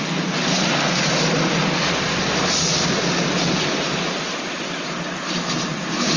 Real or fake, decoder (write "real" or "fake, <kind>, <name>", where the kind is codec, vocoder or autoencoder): real